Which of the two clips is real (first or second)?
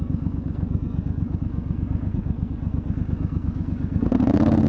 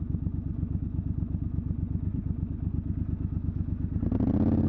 second